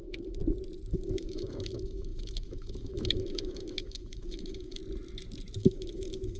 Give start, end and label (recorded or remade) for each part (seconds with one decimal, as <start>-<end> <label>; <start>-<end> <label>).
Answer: 0.0-0.4 remade; 0.4-0.9 recorded; 0.9-4.8 remade; 4.8-5.6 recorded; 5.6-6.4 remade